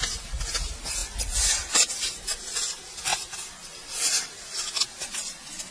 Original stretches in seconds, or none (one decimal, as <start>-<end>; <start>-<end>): 0.0-5.7